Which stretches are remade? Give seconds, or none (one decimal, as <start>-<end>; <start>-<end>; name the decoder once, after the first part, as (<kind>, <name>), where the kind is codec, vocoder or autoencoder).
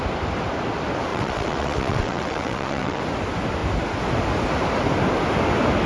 1.1-3.0 (vocoder, WaveNeXt)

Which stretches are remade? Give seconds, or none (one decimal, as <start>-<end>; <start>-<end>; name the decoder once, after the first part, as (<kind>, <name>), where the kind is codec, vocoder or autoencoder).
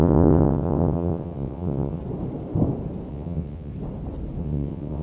0.0-2.0 (vocoder, WaveNeXt); 3.1-3.7; 4.4-5.0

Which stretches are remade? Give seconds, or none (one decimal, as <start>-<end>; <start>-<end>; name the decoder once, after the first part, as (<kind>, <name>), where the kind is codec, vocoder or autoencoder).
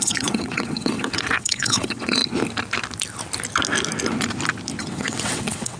0.0-2.2 (vocoder, WaveNeXt); 4.8-5.8